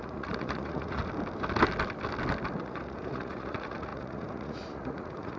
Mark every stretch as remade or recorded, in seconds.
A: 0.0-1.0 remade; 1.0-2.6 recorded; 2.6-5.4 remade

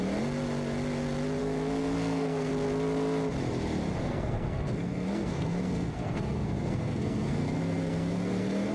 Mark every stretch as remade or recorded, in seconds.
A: 0.0-1.4 recorded; 1.4-2.5 remade; 2.5-4.0 recorded; 4.0-8.7 remade

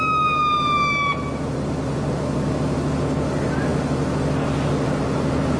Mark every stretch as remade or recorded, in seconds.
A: 0.0-5.6 recorded